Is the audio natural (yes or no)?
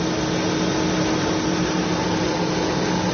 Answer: yes